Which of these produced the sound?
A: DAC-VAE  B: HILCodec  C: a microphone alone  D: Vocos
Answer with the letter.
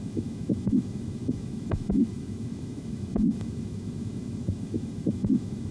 A